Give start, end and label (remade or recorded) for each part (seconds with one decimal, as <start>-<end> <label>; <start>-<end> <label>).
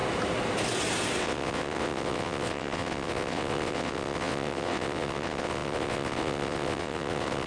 0.0-1.2 recorded; 1.2-7.5 remade